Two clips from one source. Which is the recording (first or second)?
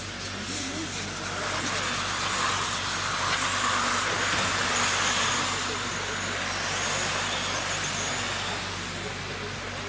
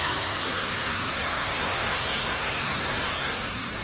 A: first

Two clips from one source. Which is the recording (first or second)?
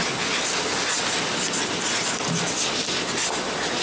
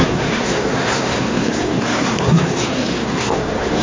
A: first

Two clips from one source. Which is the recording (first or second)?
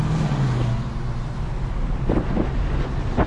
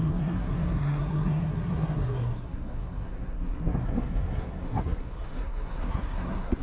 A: first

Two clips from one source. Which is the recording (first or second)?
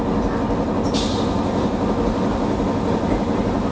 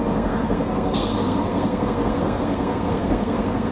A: first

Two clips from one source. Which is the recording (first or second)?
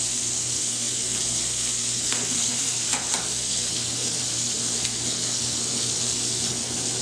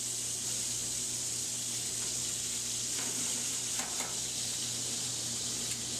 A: second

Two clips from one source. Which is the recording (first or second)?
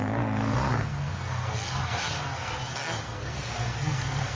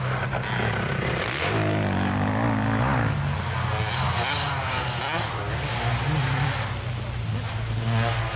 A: second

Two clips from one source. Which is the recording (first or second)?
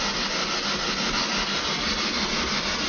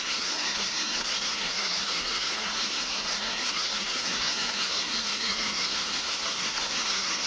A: first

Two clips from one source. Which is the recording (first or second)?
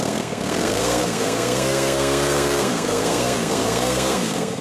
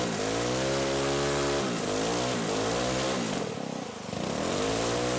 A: second